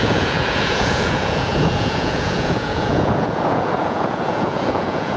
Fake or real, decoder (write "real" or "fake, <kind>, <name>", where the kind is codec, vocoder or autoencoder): fake, vocoder, Vocos